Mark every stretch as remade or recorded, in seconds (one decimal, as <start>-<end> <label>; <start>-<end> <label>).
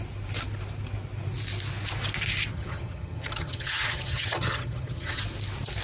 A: 0.0-2.5 recorded; 2.5-5.2 remade; 5.2-5.8 recorded